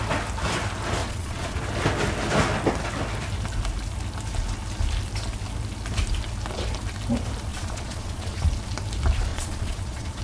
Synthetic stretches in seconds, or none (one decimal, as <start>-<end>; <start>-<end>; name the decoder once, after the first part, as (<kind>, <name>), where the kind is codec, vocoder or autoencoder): 1.0-1.6 (vocoder, Vocos); 7.5-8.5; 9.3-10.2